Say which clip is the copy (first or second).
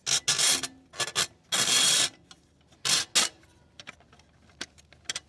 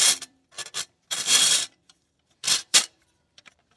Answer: second